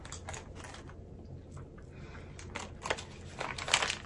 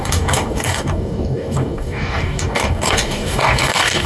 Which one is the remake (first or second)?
second